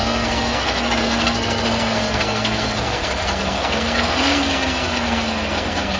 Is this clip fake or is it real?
fake